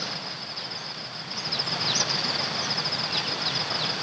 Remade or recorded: recorded